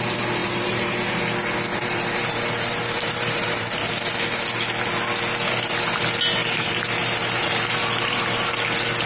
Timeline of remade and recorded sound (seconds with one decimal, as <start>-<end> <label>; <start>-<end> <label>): 0.0-0.4 recorded; 0.4-1.2 remade; 1.2-1.7 recorded; 1.7-3.9 remade; 3.9-6.4 recorded; 6.4-8.5 remade; 8.5-9.1 recorded